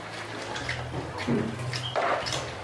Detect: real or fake real